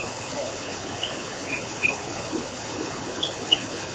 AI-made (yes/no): yes